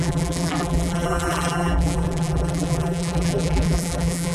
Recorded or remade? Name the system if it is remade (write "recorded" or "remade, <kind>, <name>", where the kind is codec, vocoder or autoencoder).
remade, vocoder, BigVGAN v2